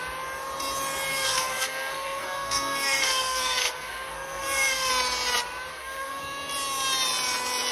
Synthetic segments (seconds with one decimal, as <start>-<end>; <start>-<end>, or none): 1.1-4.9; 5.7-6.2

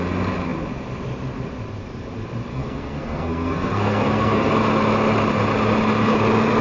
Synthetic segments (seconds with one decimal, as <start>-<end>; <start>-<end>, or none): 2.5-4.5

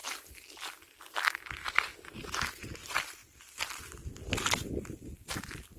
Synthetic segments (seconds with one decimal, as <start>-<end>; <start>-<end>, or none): none

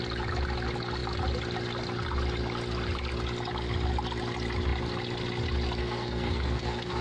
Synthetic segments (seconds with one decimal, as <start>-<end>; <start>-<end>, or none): 5.8-7.0

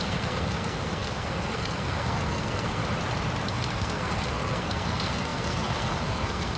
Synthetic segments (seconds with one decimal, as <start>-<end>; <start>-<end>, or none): 0.0-2.8; 3.5-6.6

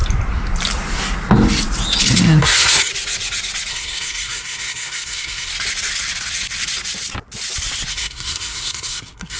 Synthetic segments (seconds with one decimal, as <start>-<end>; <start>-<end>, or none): 2.4-2.9; 3.7-5.5; 7.9-9.4